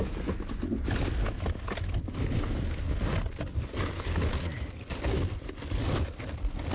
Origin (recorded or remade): recorded